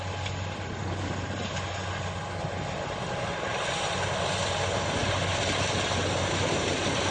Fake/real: real